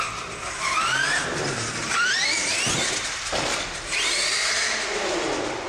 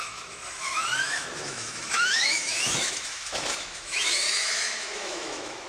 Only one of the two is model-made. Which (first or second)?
second